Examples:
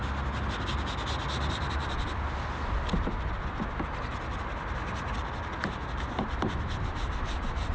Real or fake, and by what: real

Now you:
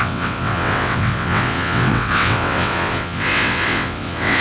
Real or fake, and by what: fake, vocoder, WaveNeXt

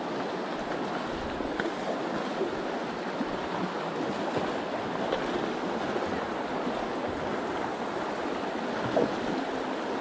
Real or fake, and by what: real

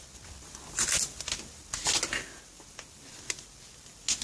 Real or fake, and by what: real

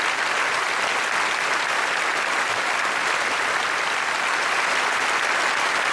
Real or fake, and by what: real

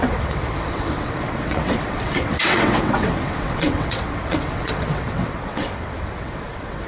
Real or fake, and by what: fake, vocoder, WaveNeXt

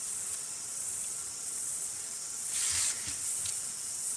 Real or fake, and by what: fake, vocoder, WaveNeXt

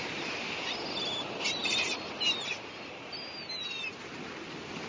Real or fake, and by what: real